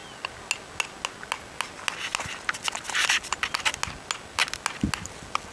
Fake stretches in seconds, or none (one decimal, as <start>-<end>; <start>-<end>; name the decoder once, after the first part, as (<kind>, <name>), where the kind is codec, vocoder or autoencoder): none